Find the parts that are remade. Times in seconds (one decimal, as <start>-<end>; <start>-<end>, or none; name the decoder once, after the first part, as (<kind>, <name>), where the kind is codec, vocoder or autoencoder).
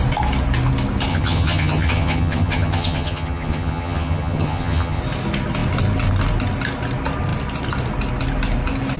1.1-5.0 (vocoder, HiFi-GAN)